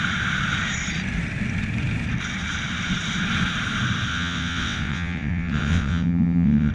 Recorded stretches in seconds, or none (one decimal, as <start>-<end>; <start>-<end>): 0.0-4.1